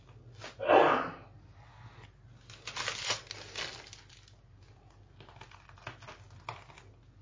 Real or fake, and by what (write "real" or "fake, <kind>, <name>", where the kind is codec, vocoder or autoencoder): real